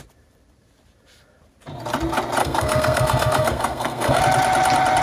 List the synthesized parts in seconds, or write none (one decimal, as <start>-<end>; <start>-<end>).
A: 2.4-4.2